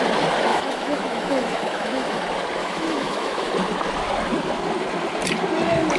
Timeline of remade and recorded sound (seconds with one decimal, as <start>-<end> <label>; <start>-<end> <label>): 0.0-0.5 recorded; 0.5-2.2 remade; 2.2-2.6 recorded; 2.6-3.5 remade; 3.5-6.0 recorded